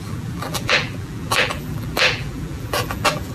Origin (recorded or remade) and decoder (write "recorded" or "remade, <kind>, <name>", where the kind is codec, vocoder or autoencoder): remade, vocoder, BigVGAN v2